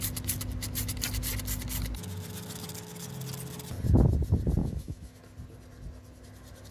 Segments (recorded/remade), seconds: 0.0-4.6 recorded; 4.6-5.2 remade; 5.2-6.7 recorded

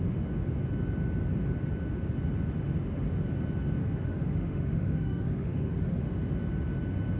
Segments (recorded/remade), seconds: 0.0-3.8 recorded; 3.8-6.1 remade; 6.1-7.2 recorded

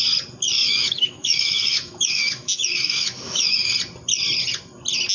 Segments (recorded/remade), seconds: 0.0-0.6 recorded; 0.6-3.7 remade; 3.7-5.1 recorded

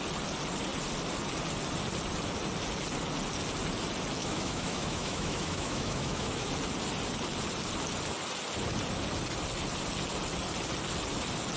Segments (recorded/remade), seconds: 0.0-4.2 recorded; 4.2-6.5 remade; 6.5-11.6 recorded